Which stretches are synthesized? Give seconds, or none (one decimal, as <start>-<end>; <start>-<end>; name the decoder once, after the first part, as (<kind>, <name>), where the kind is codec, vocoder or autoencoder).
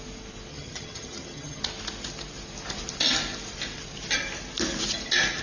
0.5-1.6 (vocoder, HiFi-GAN)